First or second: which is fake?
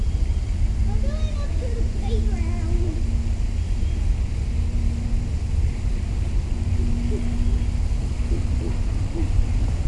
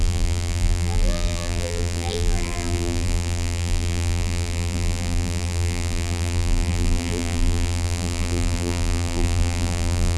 second